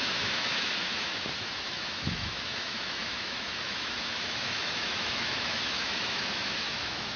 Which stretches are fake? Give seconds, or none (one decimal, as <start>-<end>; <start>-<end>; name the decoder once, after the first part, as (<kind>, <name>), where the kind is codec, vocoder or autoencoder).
0.0-7.2 (autoencoder, DAC-VAE)